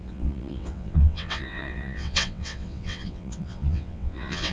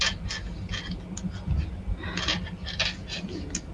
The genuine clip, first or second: second